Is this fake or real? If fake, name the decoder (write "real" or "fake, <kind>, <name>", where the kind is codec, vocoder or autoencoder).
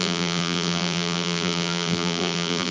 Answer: fake, vocoder, BigVGAN v2